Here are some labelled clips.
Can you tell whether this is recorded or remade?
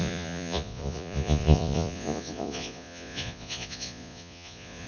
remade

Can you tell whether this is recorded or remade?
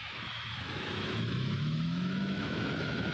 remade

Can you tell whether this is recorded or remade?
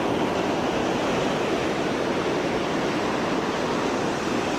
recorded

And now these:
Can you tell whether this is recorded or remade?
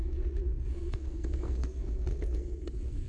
remade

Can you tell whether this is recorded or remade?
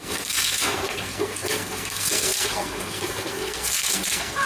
remade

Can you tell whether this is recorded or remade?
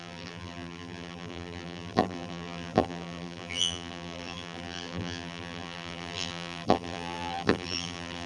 remade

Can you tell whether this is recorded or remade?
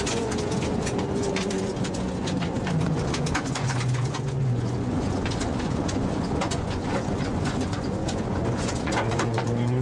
remade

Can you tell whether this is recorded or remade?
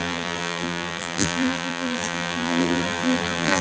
remade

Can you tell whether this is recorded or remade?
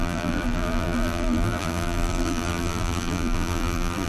remade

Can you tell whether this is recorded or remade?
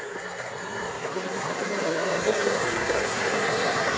remade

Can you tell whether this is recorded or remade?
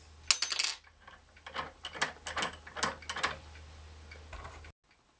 recorded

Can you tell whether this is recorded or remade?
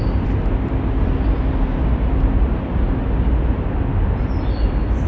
recorded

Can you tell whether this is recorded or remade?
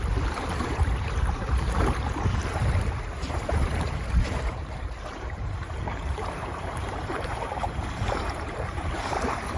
remade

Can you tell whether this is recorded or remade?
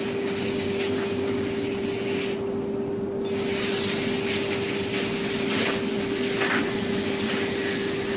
recorded